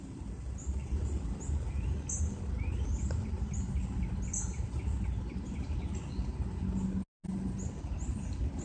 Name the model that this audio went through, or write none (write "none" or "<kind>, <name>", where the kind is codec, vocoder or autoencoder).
none